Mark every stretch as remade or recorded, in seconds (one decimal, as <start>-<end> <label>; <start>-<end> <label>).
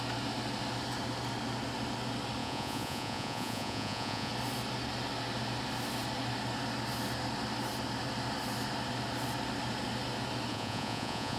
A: 0.0-2.4 recorded; 2.4-4.3 remade; 4.3-10.5 recorded; 10.5-11.4 remade